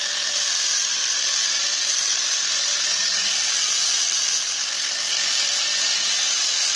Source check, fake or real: real